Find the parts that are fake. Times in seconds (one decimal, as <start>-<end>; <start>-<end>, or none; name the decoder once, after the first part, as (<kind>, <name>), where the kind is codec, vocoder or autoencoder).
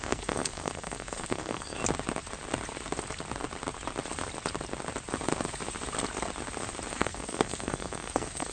0.0-1.8 (codec, SNAC); 6.9-8.5